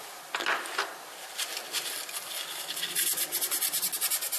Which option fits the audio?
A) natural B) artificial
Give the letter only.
A